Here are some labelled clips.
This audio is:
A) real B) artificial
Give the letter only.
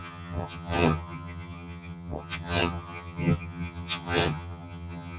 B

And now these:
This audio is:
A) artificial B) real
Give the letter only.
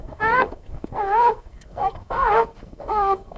A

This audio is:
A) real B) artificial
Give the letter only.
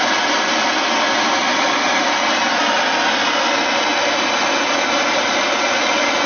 A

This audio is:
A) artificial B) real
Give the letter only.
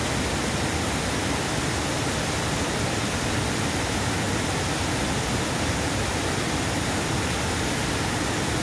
B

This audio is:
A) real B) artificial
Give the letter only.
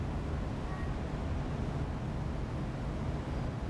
A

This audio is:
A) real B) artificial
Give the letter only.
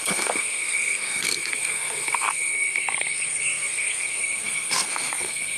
B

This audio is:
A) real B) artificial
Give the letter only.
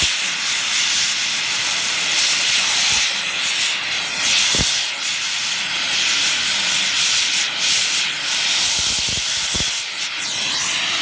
A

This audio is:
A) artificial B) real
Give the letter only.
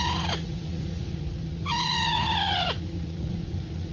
A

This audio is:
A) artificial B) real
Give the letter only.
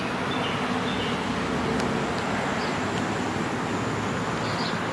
B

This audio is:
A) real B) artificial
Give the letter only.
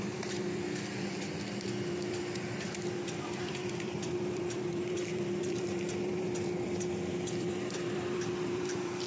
B